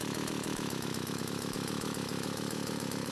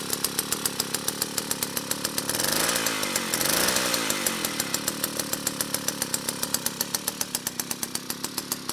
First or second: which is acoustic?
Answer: second